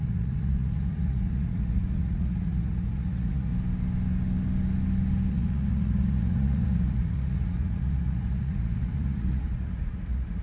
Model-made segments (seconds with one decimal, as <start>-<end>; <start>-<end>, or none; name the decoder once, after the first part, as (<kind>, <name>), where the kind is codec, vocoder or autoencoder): 0.0-3.5 (vocoder, Vocos); 5.3-10.4